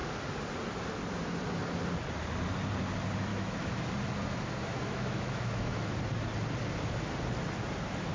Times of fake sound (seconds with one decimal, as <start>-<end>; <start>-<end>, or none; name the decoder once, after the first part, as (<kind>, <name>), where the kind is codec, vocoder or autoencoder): 3.3-3.9 (autoencoder, DAC-VAE); 4.7-5.9

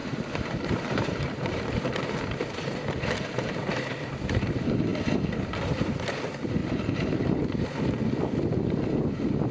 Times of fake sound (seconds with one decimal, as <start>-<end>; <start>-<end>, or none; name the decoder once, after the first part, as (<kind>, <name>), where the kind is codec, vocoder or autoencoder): 0.0-4.5 (vocoder, BigVGAN v2); 6.6-7.8

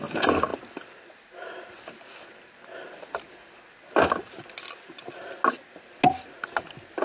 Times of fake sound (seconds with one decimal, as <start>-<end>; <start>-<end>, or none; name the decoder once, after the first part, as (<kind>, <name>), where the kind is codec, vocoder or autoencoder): none

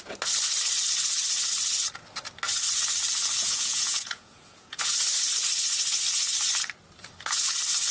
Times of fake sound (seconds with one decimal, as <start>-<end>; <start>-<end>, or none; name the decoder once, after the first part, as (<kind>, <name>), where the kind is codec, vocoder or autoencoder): 3.4-4.9 (vocoder, Vocos)

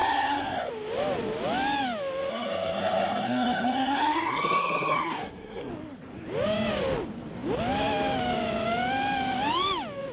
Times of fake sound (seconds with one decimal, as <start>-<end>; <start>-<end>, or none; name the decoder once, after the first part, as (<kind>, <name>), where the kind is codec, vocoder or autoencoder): 0.0-0.7 (codec, SNAC); 2.3-5.7

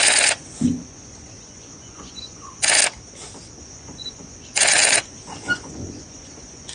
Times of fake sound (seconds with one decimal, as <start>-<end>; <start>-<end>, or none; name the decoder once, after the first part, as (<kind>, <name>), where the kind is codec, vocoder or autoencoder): 0.0-2.8 (vocoder, Vocos); 3.6-6.7